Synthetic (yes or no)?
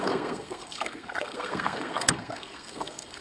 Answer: yes